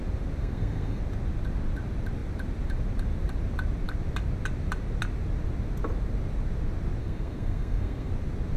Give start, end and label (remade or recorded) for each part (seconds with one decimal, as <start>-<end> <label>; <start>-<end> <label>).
0.0-0.4 recorded; 0.4-1.0 remade; 1.0-7.0 recorded; 7.0-8.1 remade; 8.1-8.6 recorded